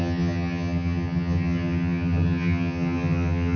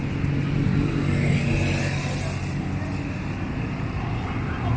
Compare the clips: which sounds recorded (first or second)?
second